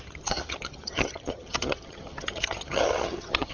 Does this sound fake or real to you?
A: fake